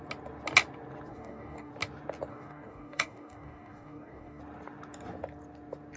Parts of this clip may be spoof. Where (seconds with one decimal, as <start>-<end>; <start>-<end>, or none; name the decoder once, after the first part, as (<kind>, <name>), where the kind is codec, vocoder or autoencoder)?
1.1-1.7 (codec, DAC); 2.3-4.4